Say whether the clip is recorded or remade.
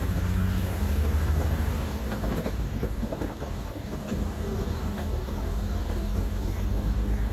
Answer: remade